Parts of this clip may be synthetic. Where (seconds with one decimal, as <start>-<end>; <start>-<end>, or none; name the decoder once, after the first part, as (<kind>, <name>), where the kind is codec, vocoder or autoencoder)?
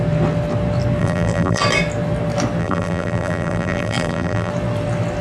1.0-1.6 (vocoder, BigVGAN v2); 2.6-4.5